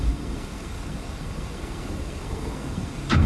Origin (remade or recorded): remade